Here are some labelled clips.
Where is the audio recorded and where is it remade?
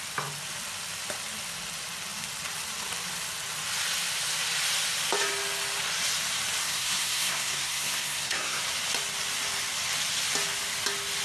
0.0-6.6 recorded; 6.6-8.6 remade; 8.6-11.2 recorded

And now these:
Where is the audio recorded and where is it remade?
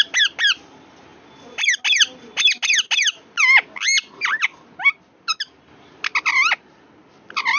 0.0-7.6 recorded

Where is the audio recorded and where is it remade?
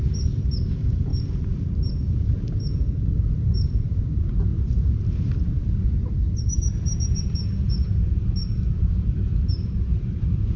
0.0-10.6 remade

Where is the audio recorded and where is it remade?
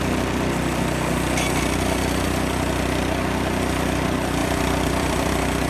0.0-4.4 recorded; 4.4-5.3 remade; 5.3-5.7 recorded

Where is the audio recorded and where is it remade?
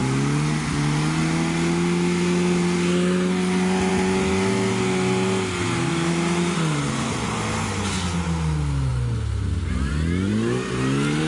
0.0-11.3 recorded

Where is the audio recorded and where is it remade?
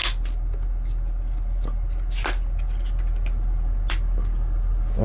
0.0-5.0 recorded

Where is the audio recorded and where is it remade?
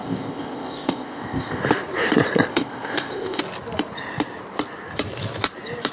0.0-1.6 remade; 1.6-2.5 recorded; 2.5-3.4 remade; 3.4-5.9 recorded